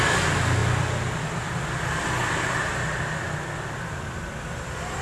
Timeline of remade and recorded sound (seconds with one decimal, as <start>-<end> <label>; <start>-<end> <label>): 0.0-5.0 recorded